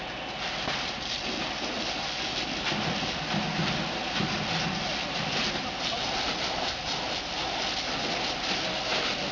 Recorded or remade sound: recorded